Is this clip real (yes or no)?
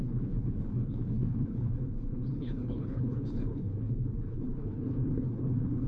no